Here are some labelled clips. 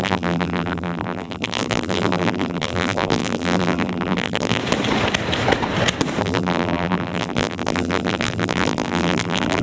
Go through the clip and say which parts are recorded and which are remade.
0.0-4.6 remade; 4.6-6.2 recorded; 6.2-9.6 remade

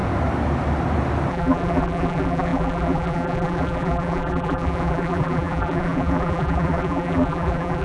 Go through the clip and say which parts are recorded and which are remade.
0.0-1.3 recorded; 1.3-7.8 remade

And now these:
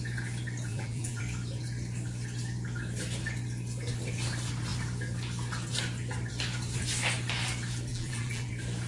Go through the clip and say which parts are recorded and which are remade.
0.0-0.7 recorded; 0.7-1.2 remade; 1.2-7.9 recorded; 7.9-8.5 remade; 8.5-8.9 recorded

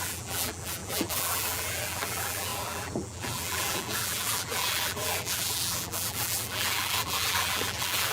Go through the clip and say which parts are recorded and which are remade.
0.0-8.1 remade